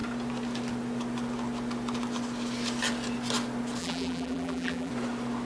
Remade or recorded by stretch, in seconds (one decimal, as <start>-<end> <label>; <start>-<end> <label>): 0.0-3.8 recorded; 3.8-4.9 remade; 4.9-5.4 recorded